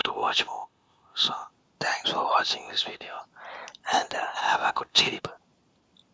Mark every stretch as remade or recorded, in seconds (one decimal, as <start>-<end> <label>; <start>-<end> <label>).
0.0-1.5 remade; 1.5-2.4 recorded; 2.4-3.2 remade; 3.2-4.4 recorded; 4.4-5.2 remade; 5.2-6.1 recorded